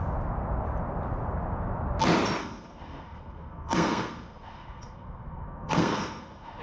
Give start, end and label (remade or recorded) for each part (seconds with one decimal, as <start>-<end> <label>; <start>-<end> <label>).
0.0-2.4 recorded; 2.4-6.6 remade

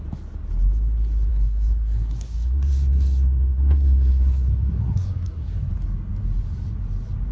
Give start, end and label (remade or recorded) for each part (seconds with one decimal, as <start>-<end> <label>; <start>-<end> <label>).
0.0-1.3 recorded; 1.3-5.7 remade; 5.7-7.3 recorded

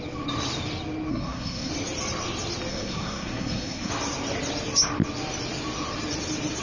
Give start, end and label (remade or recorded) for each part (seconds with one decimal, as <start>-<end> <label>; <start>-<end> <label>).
0.0-1.1 recorded; 1.1-1.7 remade; 1.7-2.7 recorded; 2.7-3.9 remade; 3.9-6.6 recorded

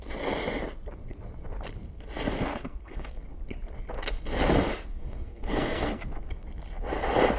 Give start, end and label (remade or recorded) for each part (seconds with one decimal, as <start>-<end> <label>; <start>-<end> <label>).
0.0-2.5 recorded; 2.5-3.2 remade; 3.2-4.9 recorded; 4.9-6.0 remade; 6.0-7.4 recorded